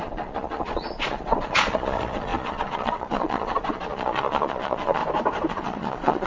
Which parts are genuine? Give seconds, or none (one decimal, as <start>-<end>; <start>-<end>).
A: 5.0-5.5